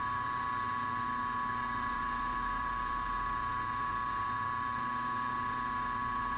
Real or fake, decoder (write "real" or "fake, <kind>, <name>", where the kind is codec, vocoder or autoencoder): real